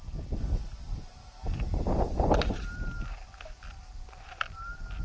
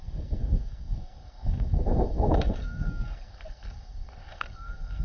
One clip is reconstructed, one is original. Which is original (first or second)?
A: first